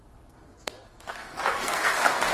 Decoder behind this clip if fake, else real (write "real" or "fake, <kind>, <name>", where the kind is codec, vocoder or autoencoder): fake, codec, SNAC